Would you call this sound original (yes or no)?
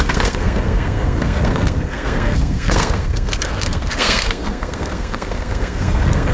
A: no